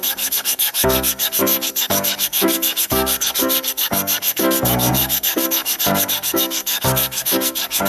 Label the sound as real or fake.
fake